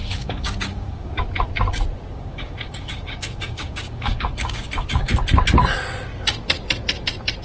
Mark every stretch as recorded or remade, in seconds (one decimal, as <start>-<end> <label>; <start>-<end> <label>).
0.0-1.2 remade; 1.2-2.1 recorded; 2.1-5.1 remade; 5.1-7.4 recorded